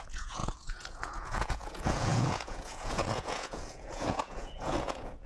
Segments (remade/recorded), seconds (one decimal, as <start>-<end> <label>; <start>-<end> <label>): 0.0-5.3 remade